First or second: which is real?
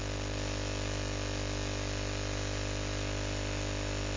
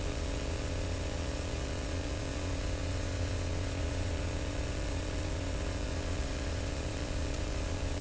first